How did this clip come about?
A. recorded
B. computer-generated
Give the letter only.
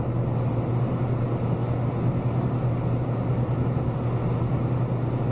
A